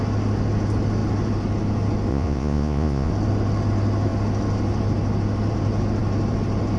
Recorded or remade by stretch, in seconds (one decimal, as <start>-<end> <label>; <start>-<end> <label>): 0.0-2.1 recorded; 2.1-3.1 remade; 3.1-6.8 recorded